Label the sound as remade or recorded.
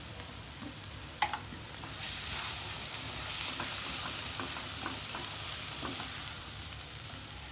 remade